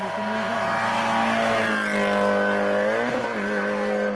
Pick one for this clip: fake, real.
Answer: real